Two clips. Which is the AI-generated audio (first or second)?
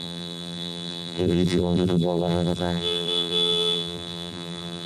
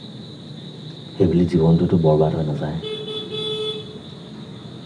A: first